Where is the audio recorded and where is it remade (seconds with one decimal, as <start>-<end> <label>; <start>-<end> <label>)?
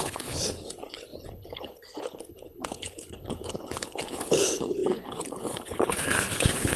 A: 0.0-6.8 remade